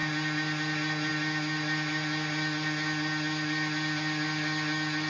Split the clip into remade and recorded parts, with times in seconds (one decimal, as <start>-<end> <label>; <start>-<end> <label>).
0.0-5.1 recorded